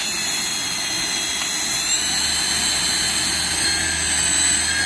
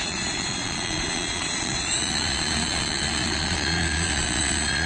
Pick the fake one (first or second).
second